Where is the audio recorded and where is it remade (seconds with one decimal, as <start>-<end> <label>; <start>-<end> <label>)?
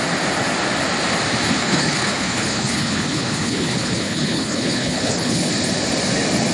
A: 0.0-1.6 recorded; 1.6-5.5 remade; 5.5-6.5 recorded